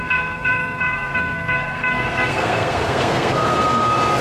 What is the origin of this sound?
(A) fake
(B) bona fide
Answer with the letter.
A